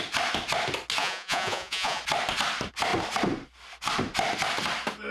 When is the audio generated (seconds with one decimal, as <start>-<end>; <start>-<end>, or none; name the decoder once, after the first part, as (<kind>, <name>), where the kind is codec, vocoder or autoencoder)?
1.0-2.0 (vocoder, Vocos)